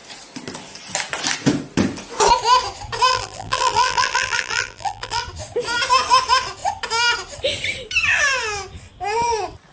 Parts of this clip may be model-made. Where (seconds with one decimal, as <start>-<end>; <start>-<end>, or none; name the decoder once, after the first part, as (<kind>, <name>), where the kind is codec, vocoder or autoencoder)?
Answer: 3.1-5.2 (vocoder, BigVGAN v2)